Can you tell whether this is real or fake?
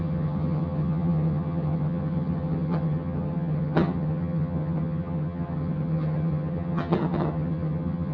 fake